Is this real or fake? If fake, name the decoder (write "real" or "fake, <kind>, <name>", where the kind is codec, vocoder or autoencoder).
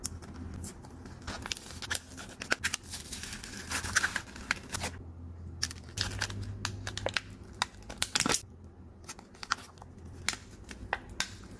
real